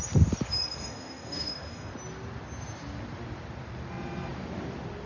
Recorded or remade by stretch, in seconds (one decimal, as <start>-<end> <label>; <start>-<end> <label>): 0.0-0.8 recorded; 0.8-1.9 remade; 1.9-5.1 recorded